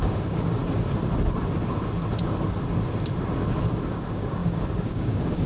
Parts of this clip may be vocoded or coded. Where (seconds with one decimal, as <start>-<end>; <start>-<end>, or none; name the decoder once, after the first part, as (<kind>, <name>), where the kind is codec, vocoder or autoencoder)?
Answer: 0.0-0.6 (codec, DAC); 3.9-5.5